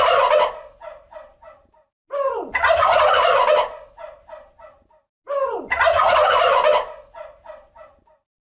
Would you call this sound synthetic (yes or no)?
no